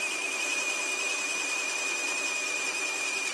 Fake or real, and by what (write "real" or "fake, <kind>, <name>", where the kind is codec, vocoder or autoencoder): real